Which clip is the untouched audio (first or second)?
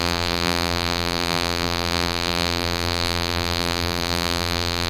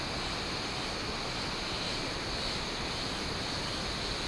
second